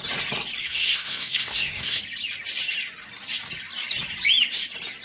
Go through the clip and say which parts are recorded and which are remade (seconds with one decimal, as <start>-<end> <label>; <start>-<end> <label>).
0.0-0.6 recorded; 0.6-2.0 remade; 2.0-5.0 recorded